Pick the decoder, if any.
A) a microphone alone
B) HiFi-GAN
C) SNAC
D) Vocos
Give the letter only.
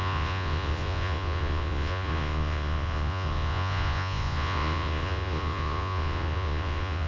D